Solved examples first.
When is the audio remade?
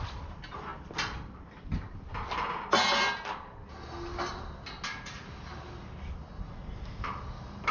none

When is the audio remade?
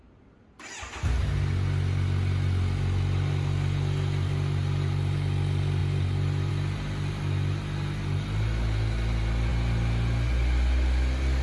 none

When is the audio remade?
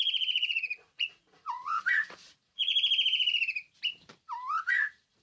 0.0-2.7 (vocoder, Vocos); 4.6-5.2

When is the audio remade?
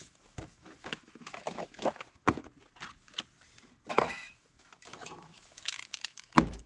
0.0-2.5 (autoencoder, DAC-VAE); 3.9-6.7